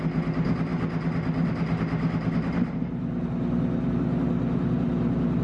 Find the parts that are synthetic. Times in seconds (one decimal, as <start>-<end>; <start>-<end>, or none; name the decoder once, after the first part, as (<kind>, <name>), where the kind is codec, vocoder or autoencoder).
none